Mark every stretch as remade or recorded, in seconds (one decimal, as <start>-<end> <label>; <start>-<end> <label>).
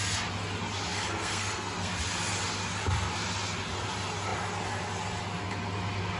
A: 0.0-0.9 recorded; 0.9-1.9 remade; 1.9-6.2 recorded